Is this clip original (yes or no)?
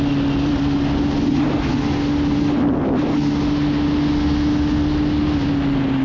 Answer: yes